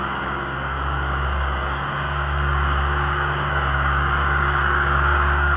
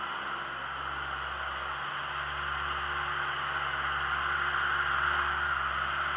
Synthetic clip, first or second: first